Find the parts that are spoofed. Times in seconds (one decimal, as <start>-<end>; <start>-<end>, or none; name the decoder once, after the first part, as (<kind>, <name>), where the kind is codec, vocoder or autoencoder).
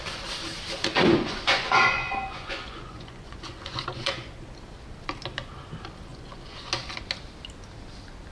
0.9-4.3 (vocoder, Vocos); 6.1-6.7